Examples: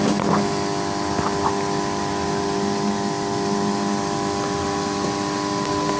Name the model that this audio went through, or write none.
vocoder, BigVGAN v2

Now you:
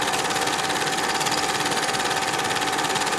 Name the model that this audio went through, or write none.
vocoder, BigVGAN v2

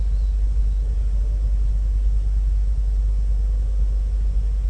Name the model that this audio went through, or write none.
none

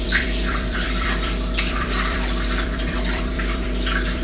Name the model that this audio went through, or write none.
vocoder, BigVGAN v2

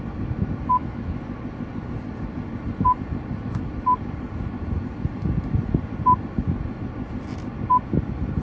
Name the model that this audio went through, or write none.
none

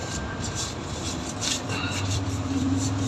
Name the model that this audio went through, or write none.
vocoder, BigVGAN v2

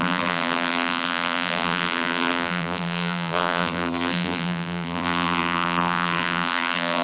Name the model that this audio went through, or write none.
vocoder, BigVGAN v2